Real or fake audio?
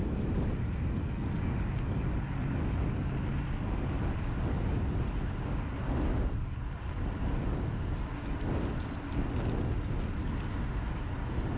real